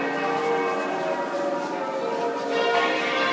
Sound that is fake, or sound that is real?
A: real